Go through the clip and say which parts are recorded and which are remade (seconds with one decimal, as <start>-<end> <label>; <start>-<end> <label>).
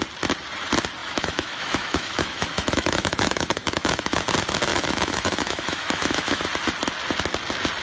0.0-1.0 recorded; 1.0-4.2 remade; 4.2-4.7 recorded; 4.7-6.4 remade; 6.4-7.8 recorded